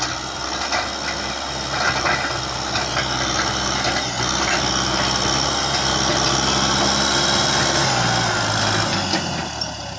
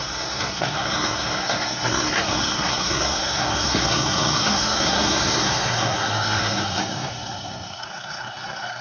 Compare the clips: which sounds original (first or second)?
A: first